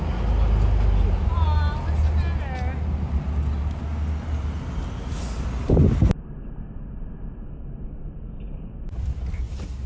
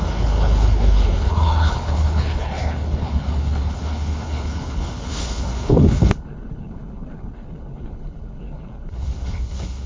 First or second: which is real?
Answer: first